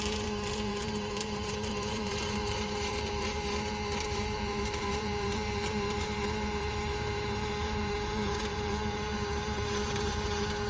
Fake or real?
fake